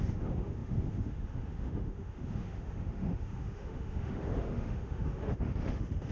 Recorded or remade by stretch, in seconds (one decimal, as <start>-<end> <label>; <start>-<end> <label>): 0.0-6.1 remade